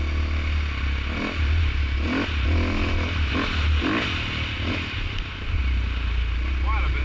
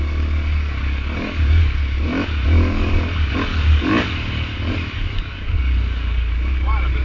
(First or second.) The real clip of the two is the first